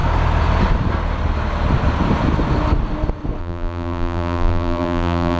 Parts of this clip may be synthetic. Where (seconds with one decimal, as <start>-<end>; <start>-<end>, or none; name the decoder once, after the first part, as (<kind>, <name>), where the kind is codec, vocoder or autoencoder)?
3.4-5.4 (vocoder, BigVGAN v2)